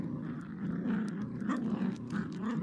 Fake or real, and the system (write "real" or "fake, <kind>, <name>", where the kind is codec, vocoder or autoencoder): real